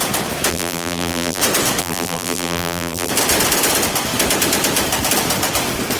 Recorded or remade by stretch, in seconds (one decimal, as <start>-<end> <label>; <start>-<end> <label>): 0.0-0.5 recorded; 0.5-1.4 remade; 1.4-1.8 recorded; 1.8-3.1 remade; 3.1-6.0 recorded